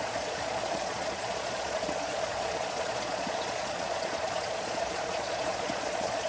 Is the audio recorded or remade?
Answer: remade